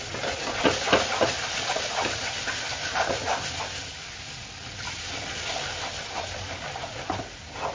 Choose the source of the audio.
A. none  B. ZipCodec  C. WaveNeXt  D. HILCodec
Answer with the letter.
A